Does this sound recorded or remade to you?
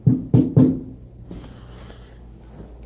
recorded